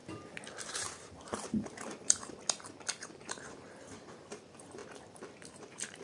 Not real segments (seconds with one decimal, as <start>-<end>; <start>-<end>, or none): 0.6-2.4; 3.2-4.8; 5.5-6.0